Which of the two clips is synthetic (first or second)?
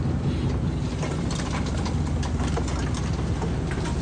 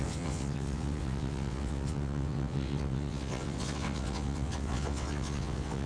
second